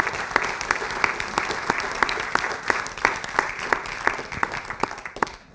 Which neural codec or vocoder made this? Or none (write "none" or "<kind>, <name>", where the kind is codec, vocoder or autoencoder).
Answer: none